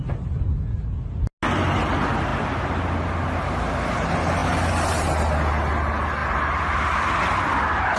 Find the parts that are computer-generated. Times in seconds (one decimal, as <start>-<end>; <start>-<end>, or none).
none